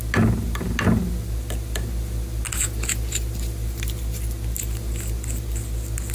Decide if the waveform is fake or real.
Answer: real